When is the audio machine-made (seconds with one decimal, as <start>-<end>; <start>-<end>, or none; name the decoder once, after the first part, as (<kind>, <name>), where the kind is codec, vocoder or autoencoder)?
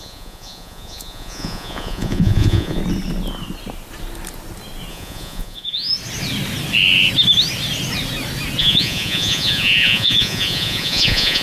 0.0-2.8 (vocoder, Vocos); 4.9-5.9; 8.6-11.4